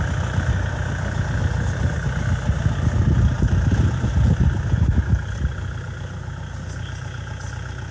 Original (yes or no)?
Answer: yes